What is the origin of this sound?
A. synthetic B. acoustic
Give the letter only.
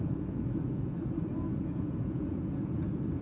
A